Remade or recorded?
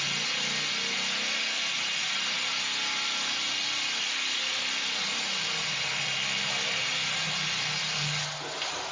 recorded